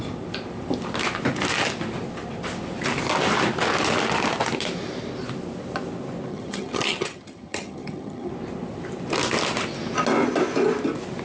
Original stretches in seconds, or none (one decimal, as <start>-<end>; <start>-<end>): 0.0-6.3; 8.3-11.2